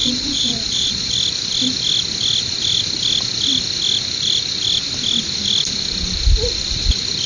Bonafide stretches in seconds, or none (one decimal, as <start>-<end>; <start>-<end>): 1.1-7.3